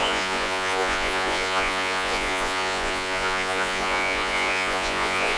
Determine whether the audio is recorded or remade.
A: remade